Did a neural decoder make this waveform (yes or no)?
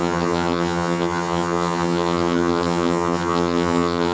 yes